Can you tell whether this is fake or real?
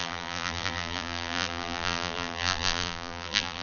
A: fake